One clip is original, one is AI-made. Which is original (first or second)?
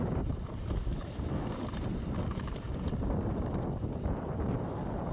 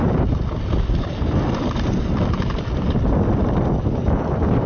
second